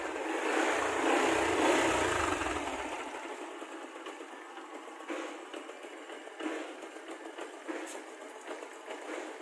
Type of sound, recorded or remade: recorded